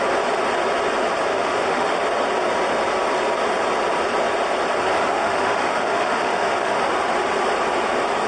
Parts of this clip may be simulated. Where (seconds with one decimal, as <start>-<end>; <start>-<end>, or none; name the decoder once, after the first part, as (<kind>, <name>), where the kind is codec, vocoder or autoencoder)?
1.3-2.0 (autoencoder, DAC-VAE); 5.1-6.9